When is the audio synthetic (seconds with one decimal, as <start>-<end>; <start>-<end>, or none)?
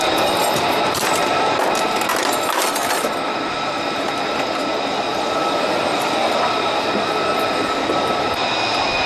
none